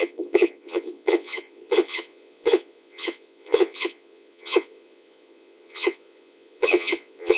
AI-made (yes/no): yes